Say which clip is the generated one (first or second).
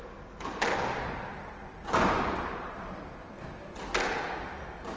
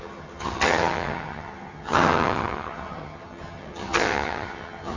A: second